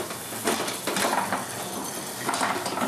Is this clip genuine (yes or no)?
yes